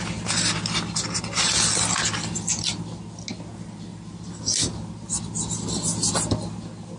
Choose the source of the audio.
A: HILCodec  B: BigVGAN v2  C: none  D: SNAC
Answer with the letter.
C